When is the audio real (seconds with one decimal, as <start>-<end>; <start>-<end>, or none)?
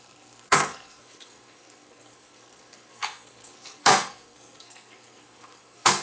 none